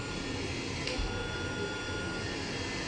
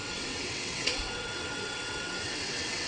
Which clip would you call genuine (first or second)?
first